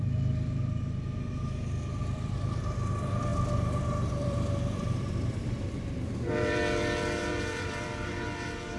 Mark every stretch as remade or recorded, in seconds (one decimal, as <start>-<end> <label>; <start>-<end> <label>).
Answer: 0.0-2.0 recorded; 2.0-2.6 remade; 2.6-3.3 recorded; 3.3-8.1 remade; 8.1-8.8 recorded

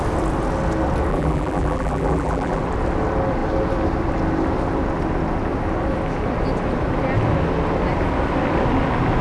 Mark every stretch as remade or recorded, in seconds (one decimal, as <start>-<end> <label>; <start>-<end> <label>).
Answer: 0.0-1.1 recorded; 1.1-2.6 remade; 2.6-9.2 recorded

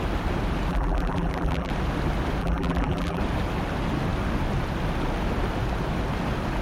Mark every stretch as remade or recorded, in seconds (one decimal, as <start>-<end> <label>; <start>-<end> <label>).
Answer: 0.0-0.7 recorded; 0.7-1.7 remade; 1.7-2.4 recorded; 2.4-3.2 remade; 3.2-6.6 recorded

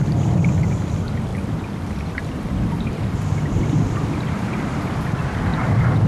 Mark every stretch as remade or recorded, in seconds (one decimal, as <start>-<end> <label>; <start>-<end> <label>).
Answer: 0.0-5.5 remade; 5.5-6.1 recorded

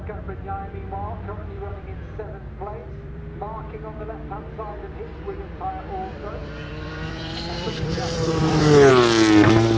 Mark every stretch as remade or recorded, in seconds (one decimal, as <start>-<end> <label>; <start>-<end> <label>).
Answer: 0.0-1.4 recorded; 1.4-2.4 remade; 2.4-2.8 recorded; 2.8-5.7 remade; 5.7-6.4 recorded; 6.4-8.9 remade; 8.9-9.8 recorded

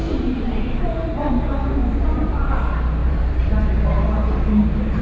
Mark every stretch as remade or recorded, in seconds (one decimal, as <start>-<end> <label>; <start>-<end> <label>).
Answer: 0.0-0.8 remade; 0.8-1.8 recorded; 1.8-2.5 remade; 2.5-3.0 recorded; 3.0-3.6 remade; 3.6-5.0 recorded